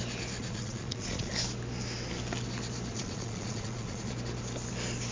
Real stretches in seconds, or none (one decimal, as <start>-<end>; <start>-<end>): 0.0-0.4; 1.3-2.9; 4.1-5.1